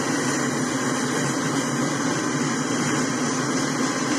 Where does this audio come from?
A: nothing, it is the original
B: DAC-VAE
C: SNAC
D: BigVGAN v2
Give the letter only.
A